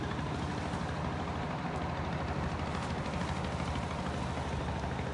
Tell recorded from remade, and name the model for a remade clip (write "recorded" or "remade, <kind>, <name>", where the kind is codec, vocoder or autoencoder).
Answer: recorded